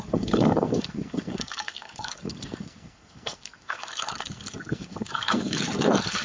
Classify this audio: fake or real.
fake